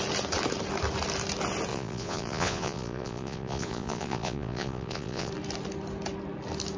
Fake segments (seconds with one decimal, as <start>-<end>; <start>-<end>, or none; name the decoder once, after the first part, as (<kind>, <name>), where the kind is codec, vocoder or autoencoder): 1.7-5.3 (vocoder, Vocos)